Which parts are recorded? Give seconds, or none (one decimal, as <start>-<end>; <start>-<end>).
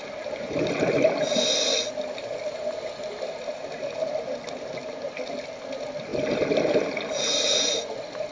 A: 0.0-8.3